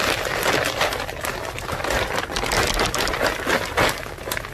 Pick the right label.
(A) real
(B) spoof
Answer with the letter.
A